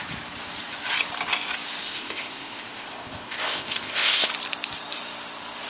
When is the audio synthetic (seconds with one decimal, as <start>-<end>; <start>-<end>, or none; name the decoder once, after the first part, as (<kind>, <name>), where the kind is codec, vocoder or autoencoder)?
1.8-4.3 (codec, ZipCodec)